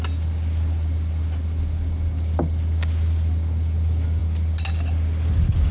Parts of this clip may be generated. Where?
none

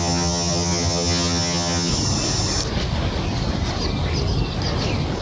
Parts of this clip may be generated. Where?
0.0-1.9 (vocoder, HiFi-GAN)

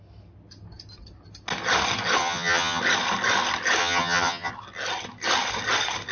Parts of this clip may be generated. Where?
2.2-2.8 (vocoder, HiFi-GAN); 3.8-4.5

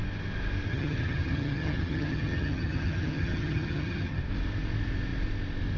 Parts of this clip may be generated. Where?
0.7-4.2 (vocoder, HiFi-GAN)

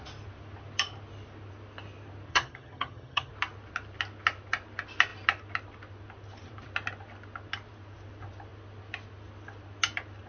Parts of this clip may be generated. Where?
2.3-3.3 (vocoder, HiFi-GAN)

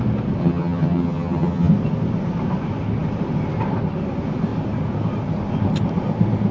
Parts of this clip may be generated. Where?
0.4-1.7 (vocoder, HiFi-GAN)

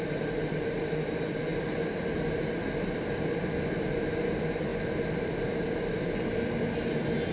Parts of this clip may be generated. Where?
none